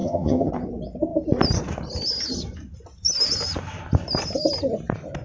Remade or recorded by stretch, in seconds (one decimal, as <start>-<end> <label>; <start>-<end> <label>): 0.0-0.5 remade; 0.5-5.2 recorded